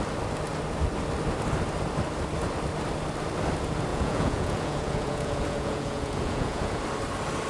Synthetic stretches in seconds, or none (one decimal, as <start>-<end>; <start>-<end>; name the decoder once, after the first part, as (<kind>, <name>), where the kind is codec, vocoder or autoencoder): 3.9-6.8 (vocoder, Vocos)